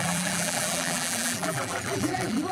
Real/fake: fake